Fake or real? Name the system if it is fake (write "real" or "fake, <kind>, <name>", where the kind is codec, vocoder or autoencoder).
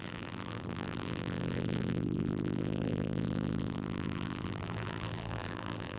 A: fake, vocoder, BigVGAN v2